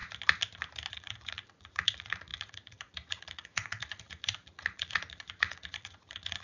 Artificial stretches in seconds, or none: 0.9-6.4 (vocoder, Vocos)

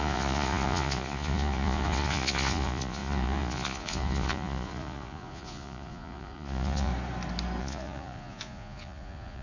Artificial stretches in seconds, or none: 0.0-6.9 (vocoder, Vocos); 7.6-9.4

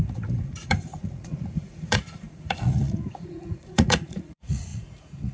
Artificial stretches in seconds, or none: 0.0-5.3 (vocoder, Vocos)